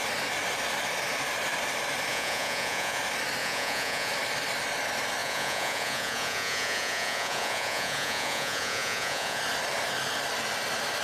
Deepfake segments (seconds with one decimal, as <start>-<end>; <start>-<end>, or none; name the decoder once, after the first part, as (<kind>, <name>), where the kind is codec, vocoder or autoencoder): 2.1-3.0 (vocoder, Vocos); 3.4-4.1; 5.2-9.4